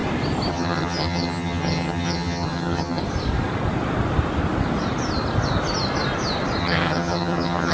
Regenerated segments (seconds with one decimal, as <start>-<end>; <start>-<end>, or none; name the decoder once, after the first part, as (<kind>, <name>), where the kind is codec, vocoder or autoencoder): 0.5-3.0 (vocoder, HiFi-GAN); 6.6-7.7